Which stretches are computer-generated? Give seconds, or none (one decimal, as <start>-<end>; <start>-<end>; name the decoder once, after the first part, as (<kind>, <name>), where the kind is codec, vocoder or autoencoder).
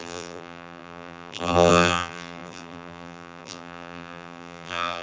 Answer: 0.0-5.0 (vocoder, BigVGAN v2)